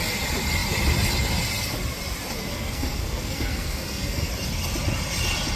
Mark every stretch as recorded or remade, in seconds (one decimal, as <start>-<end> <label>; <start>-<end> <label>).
0.0-2.5 recorded; 2.5-4.3 remade; 4.3-5.6 recorded